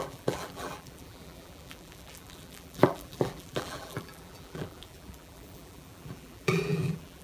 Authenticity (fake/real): fake